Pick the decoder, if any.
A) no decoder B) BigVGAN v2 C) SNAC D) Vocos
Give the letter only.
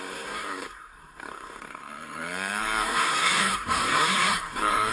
C